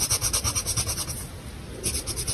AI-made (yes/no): no